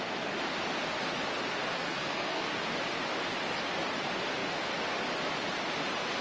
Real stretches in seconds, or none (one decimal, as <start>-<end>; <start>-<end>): 0.0-1.7; 2.4-6.2